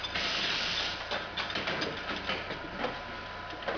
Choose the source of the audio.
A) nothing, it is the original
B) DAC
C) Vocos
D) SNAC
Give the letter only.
A